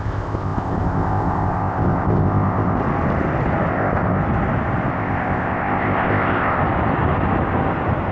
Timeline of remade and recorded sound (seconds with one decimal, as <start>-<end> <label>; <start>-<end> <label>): 0.0-2.8 remade; 2.8-3.7 recorded; 3.7-4.2 remade; 4.2-4.9 recorded; 4.9-6.6 remade; 6.6-8.1 recorded